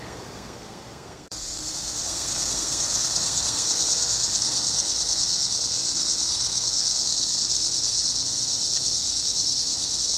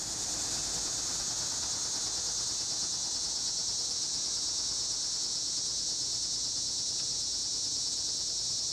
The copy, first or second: first